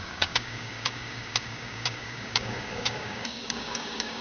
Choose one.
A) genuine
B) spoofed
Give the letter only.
B